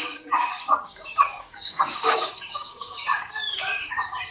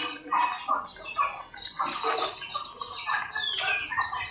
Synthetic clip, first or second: first